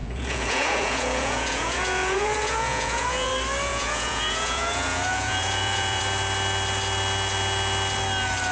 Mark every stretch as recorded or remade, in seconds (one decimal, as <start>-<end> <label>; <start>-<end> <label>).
0.0-3.3 remade; 3.3-3.7 recorded; 3.7-6.0 remade; 6.0-8.5 recorded